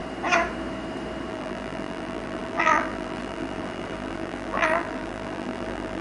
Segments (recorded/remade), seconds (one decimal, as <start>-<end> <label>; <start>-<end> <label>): 0.0-1.3 recorded; 1.3-6.0 remade